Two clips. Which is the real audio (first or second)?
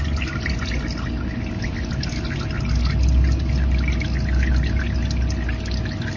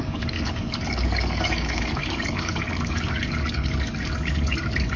first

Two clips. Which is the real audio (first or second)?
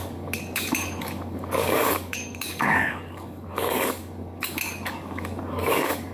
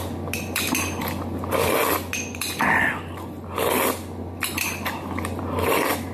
second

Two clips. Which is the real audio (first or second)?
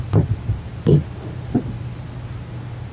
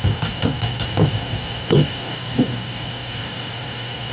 first